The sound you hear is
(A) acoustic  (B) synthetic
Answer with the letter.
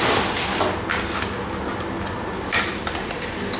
A